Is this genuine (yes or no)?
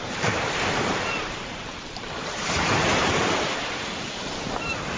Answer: no